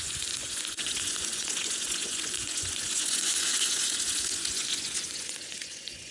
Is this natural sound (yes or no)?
no